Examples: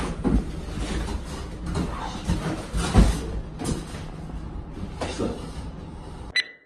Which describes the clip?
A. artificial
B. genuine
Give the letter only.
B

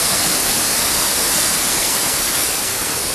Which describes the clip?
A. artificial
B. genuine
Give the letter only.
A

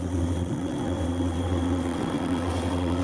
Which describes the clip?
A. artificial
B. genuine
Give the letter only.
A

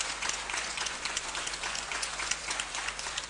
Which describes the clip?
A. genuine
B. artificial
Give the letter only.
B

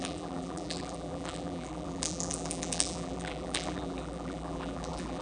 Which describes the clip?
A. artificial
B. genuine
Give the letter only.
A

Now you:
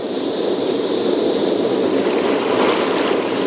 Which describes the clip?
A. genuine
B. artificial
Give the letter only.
A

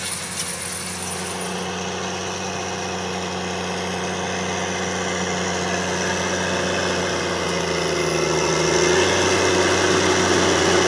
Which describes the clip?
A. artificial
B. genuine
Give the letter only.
B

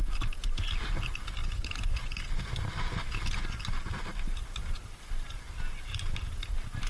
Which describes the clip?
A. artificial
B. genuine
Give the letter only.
B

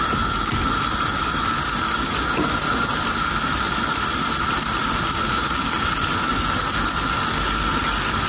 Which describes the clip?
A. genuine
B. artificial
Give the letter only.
A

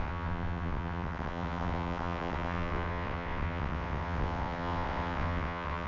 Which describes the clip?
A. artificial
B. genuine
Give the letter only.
A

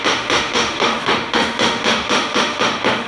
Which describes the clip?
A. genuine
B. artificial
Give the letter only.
B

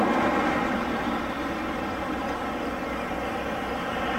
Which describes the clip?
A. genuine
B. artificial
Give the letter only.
A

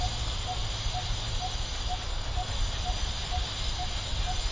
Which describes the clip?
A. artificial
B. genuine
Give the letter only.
B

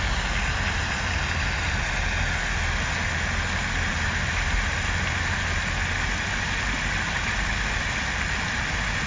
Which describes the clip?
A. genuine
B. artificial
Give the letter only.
A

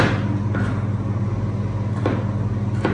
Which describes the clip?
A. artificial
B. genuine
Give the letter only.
B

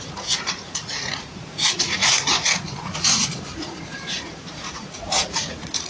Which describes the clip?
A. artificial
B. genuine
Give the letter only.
A